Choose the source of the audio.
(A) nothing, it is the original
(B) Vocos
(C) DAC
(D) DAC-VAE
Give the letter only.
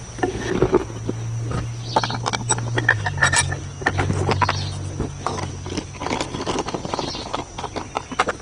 A